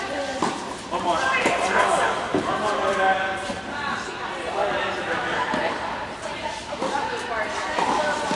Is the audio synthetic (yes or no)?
yes